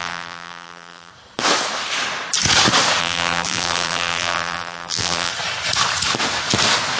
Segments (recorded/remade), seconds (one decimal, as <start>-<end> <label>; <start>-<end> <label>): 0.0-1.1 remade; 1.1-3.0 recorded; 3.0-5.3 remade; 5.3-7.0 recorded